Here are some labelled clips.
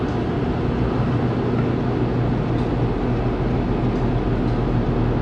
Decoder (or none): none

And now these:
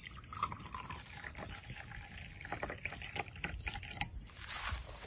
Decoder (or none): none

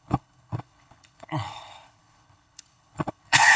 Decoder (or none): codec, HILCodec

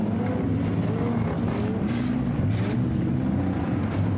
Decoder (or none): none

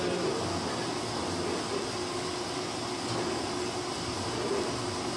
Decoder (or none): none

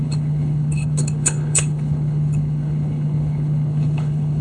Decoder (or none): codec, HILCodec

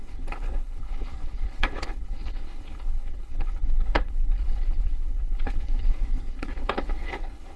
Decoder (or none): codec, HILCodec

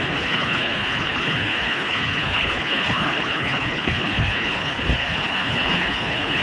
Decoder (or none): codec, HILCodec